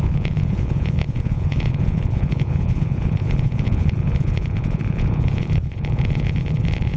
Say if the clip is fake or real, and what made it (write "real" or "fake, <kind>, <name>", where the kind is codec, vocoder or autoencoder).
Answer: fake, vocoder, Vocos